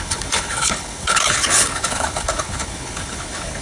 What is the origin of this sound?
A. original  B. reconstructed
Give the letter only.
B